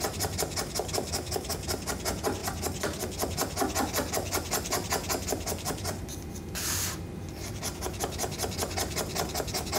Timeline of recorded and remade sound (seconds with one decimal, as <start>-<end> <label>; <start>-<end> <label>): 0.0-9.8 recorded